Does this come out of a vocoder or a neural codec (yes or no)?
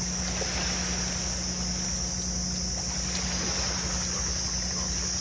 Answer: no